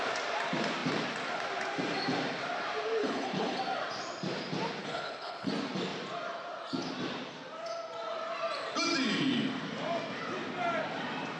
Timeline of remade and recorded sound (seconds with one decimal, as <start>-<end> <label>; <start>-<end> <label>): 0.0-3.0 recorded; 3.0-3.6 remade; 3.6-4.8 recorded; 4.8-5.5 remade; 5.5-11.4 recorded